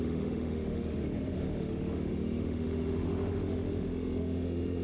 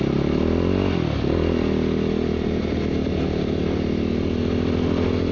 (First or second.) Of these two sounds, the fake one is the first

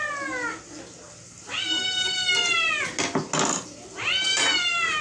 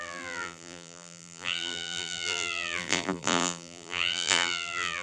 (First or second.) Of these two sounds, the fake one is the second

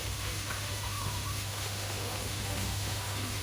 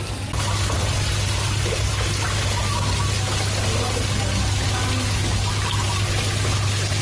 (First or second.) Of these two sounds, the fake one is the first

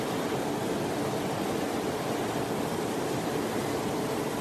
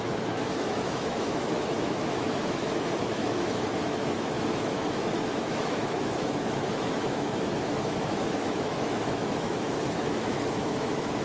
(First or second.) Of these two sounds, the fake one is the second